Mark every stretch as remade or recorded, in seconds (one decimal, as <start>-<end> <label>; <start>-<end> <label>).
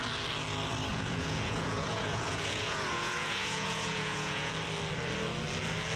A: 0.0-0.9 recorded; 0.9-4.5 remade; 4.5-6.0 recorded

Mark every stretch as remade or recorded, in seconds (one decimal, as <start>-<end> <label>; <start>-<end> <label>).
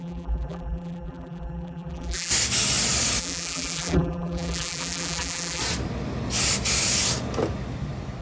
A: 0.0-2.3 remade; 2.3-3.2 recorded; 3.2-5.6 remade; 5.6-8.2 recorded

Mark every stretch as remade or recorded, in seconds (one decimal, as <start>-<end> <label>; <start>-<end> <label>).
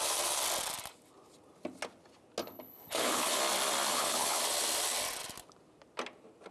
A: 0.0-2.4 recorded; 2.4-3.4 remade; 3.4-3.9 recorded; 3.9-4.4 remade; 4.4-6.5 recorded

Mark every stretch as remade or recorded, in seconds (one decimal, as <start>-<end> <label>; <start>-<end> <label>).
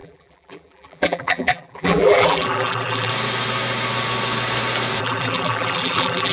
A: 0.0-3.1 remade; 3.1-5.0 recorded; 5.0-6.3 remade